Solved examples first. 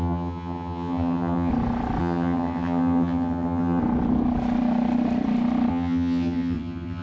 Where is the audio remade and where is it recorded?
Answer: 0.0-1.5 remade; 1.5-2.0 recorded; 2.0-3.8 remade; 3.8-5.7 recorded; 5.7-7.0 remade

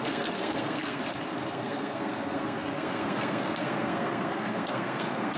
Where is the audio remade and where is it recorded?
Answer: 0.0-1.0 remade; 1.0-1.5 recorded; 1.5-5.4 remade

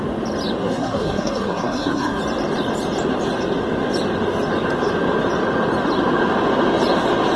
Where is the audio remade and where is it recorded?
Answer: 0.0-0.6 recorded; 0.6-2.2 remade; 2.2-7.4 recorded

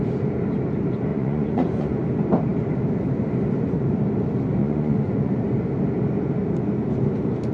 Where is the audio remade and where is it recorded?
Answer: 0.0-1.1 recorded; 1.1-2.0 remade; 2.0-4.6 recorded; 4.6-5.3 remade; 5.3-7.5 recorded

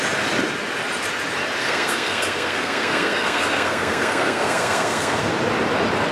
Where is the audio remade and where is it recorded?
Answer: 0.0-1.6 recorded; 1.6-5.3 remade; 5.3-6.1 recorded

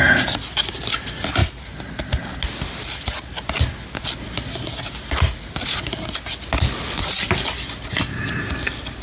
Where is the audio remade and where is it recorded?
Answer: 0.0-9.0 recorded

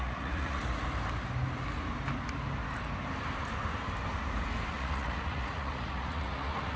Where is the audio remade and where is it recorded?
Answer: 0.0-0.6 remade; 0.6-4.7 recorded; 4.7-6.8 remade